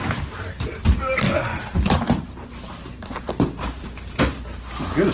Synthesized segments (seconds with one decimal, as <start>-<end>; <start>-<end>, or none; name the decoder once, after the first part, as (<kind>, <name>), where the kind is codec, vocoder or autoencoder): 0.0-0.8 (vocoder, BigVGAN v2); 1.5-4.6